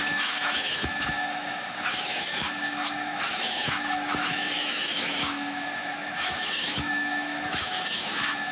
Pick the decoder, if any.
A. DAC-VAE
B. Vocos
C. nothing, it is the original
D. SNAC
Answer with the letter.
A